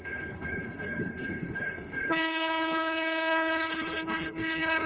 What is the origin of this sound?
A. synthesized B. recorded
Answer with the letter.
A